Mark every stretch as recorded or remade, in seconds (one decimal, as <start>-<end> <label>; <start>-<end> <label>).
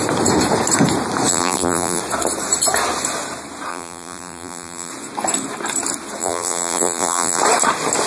0.0-1.3 recorded; 1.3-2.0 remade; 2.0-3.7 recorded; 3.7-4.9 remade; 4.9-6.2 recorded; 6.2-7.4 remade; 7.4-8.1 recorded